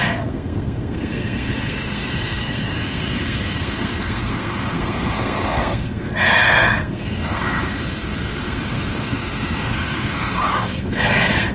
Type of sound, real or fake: fake